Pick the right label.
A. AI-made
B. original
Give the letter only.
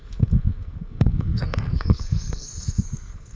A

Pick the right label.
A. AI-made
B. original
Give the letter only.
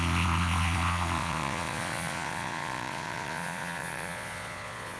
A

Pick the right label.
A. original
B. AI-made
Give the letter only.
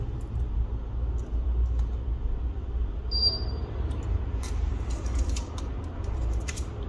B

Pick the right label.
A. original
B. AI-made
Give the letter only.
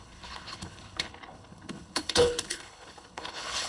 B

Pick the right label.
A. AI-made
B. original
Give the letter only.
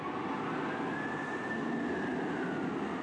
B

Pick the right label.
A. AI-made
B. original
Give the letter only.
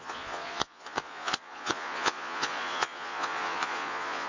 A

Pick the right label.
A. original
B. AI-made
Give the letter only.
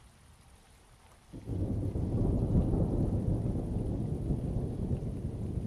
A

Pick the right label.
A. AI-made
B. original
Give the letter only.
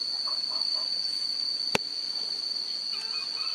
B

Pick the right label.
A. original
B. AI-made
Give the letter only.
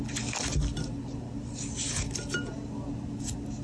A